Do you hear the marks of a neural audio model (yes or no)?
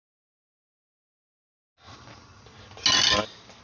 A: no